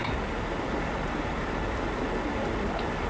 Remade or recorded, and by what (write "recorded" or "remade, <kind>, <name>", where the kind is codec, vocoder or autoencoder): remade, vocoder, BigVGAN v2